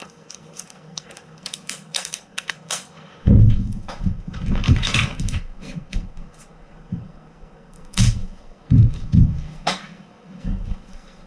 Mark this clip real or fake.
fake